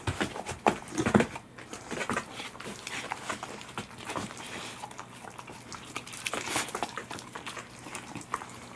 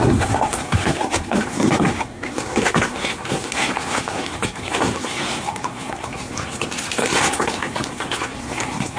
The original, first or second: first